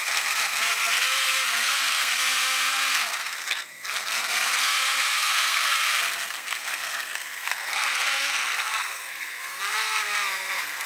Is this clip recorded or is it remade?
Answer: remade